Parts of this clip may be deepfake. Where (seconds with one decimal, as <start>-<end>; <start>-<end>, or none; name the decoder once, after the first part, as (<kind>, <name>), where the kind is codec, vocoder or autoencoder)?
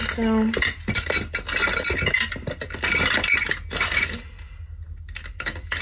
none